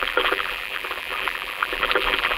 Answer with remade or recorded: remade